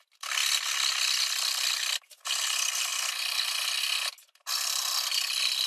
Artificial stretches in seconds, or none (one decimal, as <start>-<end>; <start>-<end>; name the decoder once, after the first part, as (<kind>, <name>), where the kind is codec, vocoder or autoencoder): none